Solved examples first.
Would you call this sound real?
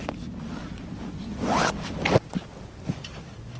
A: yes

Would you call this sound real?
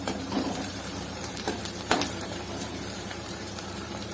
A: no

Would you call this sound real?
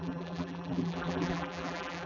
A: no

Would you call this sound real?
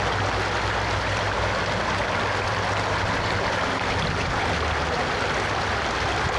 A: yes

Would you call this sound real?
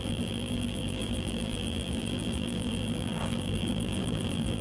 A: no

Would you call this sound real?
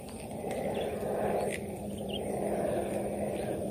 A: no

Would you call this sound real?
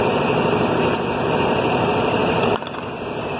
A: no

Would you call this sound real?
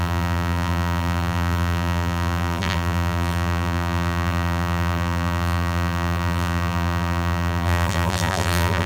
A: no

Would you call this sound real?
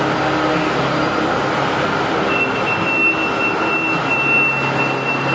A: yes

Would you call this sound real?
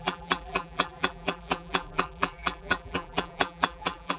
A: no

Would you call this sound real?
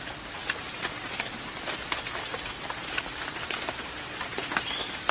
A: no